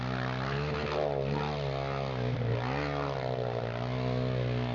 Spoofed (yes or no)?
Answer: no